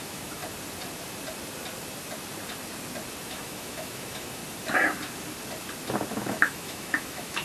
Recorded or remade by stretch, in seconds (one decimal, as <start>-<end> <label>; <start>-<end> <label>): 0.0-0.4 remade; 0.4-3.3 recorded; 3.3-4.4 remade; 4.4-6.1 recorded; 6.1-7.4 remade